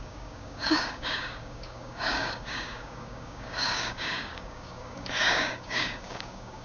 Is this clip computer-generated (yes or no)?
yes